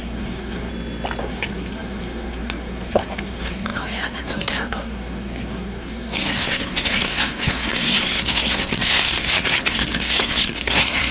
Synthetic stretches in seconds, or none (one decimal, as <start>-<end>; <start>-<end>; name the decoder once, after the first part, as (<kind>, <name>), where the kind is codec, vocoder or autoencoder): 0.0-0.7 (codec, SNAC); 1.2-11.1

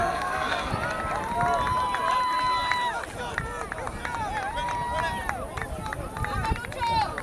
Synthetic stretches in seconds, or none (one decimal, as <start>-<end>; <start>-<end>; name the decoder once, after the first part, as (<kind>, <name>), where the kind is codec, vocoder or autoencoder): 0.0-0.7 (codec, SNAC)

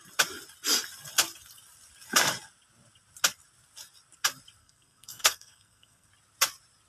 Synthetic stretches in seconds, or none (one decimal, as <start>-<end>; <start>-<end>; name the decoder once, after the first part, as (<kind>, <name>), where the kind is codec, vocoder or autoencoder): 4.6-6.1 (codec, SNAC)

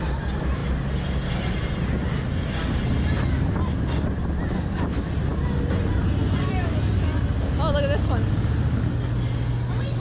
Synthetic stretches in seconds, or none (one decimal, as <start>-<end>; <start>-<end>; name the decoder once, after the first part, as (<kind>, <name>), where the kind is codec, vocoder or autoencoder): none

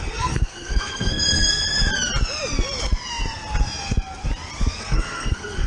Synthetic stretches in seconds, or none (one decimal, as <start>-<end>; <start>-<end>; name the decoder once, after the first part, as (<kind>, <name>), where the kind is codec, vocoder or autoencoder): 0.0-1.6 (codec, SNAC); 4.8-5.7

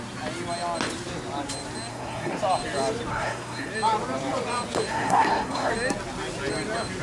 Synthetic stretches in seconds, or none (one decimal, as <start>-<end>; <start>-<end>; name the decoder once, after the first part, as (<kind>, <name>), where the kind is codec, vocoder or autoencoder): 1.9-2.4 (codec, SNAC); 3.1-3.7; 4.9-5.7